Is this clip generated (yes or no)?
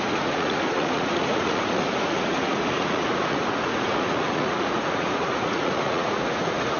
yes